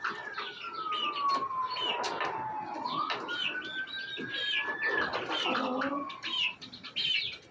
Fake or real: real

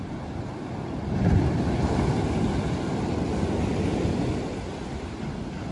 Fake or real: real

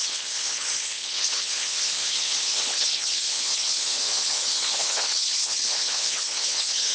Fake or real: fake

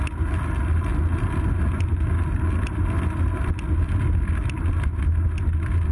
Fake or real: real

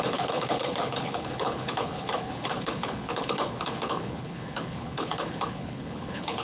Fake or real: fake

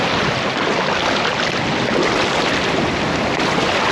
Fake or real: real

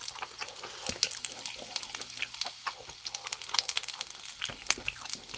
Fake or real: real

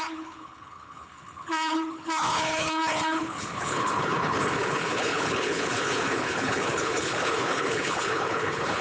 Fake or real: fake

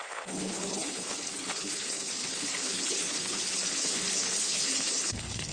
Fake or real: fake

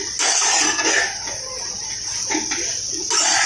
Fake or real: real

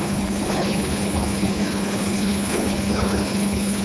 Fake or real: fake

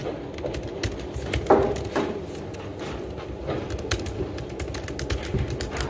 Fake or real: real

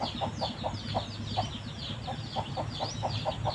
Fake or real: real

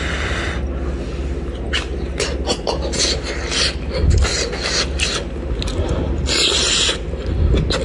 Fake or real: real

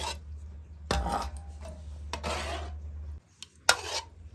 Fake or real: real